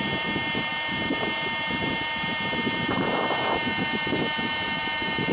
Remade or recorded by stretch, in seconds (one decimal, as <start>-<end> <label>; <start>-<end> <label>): 0.0-5.3 remade